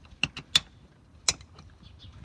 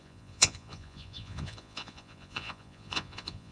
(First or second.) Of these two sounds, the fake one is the second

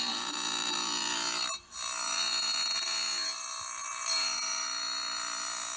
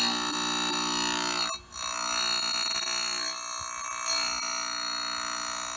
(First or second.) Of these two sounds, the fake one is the first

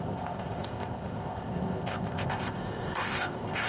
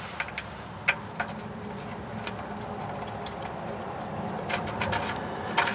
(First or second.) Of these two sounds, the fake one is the first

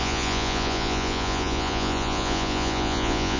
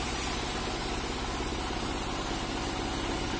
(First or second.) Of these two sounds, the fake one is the first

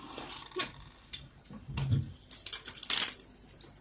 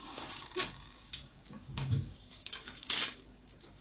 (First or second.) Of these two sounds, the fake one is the second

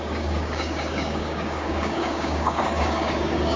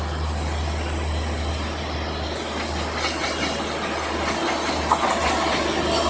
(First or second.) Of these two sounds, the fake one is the first